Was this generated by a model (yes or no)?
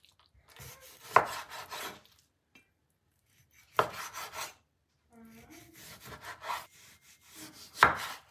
no